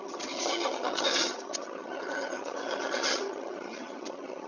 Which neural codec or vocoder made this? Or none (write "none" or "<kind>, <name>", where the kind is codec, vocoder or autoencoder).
vocoder, HiFi-GAN